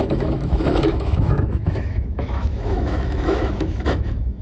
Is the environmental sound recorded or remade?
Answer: remade